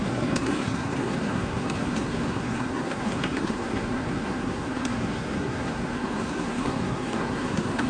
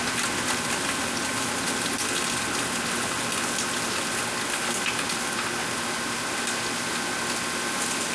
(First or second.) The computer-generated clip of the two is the first